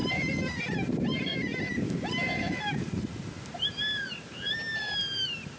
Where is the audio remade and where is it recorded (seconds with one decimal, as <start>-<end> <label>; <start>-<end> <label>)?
0.0-5.6 recorded